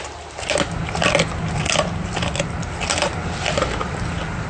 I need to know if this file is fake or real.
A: real